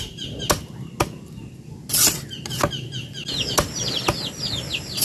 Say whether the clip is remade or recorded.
recorded